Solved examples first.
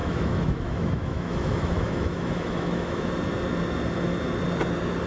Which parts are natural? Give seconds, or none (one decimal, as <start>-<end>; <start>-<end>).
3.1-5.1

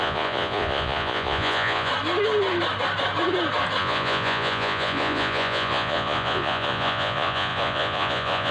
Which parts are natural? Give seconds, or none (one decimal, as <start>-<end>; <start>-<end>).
1.9-3.8

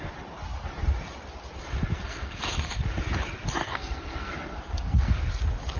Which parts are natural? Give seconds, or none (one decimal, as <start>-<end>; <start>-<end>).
0.0-1.9; 2.8-3.6; 5.2-5.8

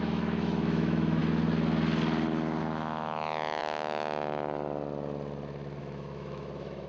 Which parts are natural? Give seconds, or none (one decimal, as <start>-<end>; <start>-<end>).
1.2-2.6; 3.6-5.8